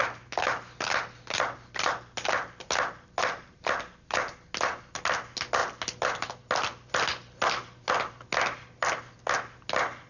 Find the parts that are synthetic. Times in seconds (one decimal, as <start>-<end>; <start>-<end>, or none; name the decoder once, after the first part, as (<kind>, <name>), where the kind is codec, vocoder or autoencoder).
none